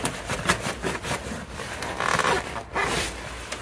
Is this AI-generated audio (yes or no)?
no